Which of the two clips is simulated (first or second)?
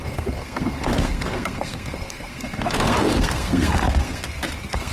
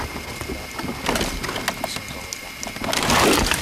first